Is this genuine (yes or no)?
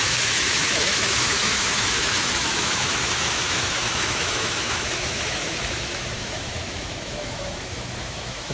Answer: no